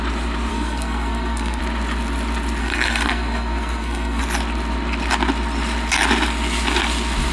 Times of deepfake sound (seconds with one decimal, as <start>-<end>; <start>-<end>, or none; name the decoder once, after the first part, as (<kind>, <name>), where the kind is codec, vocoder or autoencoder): 0.5-1.6 (codec, SNAC); 2.6-4.2